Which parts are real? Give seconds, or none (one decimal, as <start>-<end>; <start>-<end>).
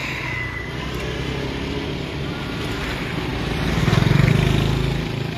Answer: 0.8-5.4